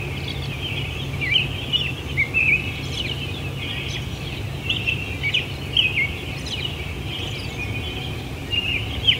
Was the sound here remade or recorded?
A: recorded